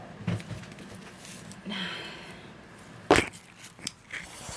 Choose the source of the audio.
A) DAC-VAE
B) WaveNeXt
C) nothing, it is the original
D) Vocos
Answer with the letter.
C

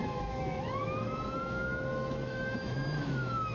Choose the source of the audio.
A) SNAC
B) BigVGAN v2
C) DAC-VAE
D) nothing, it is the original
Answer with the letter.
C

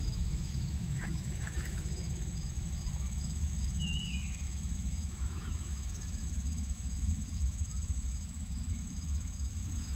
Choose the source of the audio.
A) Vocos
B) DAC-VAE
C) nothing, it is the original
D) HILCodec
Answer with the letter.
B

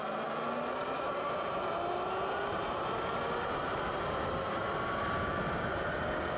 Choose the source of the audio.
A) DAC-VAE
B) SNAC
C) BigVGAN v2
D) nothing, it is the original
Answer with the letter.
D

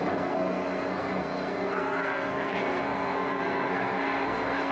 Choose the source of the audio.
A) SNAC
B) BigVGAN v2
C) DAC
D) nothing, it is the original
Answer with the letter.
A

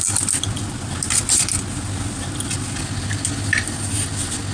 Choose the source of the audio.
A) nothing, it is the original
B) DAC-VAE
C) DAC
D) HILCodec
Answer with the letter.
A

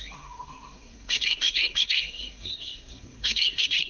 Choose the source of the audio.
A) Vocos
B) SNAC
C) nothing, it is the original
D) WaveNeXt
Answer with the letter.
B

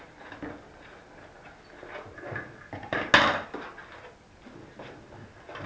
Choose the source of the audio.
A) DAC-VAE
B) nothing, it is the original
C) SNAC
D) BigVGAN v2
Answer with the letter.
B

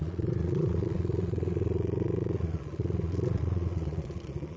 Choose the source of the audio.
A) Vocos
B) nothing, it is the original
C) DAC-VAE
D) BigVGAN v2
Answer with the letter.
A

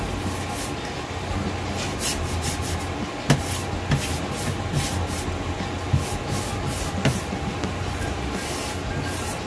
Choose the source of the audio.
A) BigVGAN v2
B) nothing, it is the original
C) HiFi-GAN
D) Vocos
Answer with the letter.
B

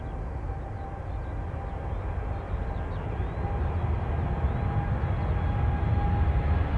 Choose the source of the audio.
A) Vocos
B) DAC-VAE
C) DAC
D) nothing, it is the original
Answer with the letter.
D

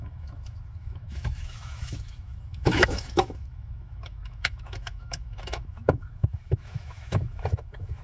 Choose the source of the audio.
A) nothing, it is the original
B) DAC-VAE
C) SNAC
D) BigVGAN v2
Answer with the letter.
B